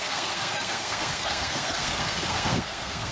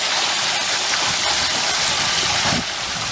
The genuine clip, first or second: second